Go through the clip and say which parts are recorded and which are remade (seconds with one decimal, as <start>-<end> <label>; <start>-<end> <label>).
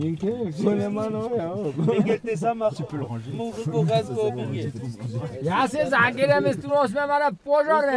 0.0-8.0 recorded